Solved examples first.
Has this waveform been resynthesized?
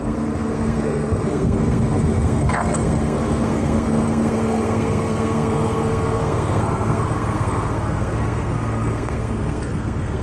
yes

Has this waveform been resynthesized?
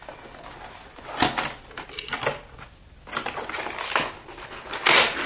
no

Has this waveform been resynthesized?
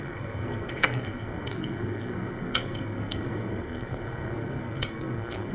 yes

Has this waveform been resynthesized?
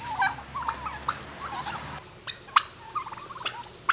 no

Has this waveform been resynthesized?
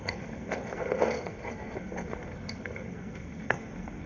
yes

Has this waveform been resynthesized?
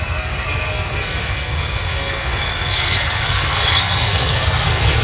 yes